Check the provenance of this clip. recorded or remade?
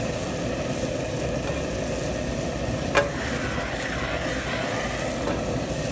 recorded